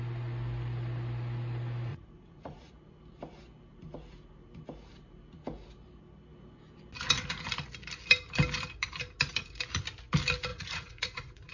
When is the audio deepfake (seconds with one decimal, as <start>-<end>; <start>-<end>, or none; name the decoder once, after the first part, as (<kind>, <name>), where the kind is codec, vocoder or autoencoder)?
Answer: 1.9-2.7 (vocoder, Vocos); 10.5-11.5